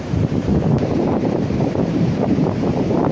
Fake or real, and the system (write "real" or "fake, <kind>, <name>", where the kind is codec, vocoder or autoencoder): fake, vocoder, BigVGAN v2